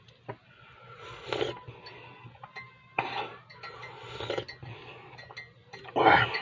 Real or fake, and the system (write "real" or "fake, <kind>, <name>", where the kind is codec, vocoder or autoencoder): real